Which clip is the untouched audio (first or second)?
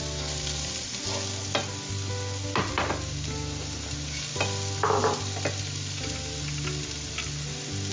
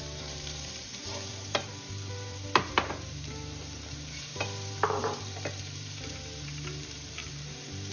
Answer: first